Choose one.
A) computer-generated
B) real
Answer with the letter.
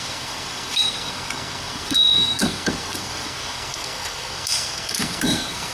A